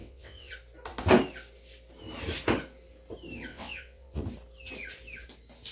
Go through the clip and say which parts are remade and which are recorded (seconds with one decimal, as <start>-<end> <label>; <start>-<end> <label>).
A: 0.0-0.5 remade; 0.5-3.5 recorded; 3.5-4.2 remade; 4.2-5.7 recorded